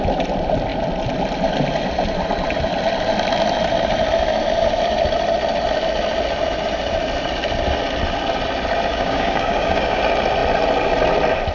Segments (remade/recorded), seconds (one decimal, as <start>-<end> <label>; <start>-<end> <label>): 0.0-8.9 recorded; 8.9-10.0 remade; 10.0-11.5 recorded